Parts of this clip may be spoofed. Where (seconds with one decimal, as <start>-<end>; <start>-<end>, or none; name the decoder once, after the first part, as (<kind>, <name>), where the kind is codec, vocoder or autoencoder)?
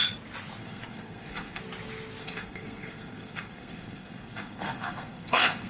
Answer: 0.6-1.6 (codec, SNAC); 2.2-5.7